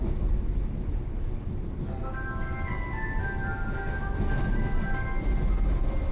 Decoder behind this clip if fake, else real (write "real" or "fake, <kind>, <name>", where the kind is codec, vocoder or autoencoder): real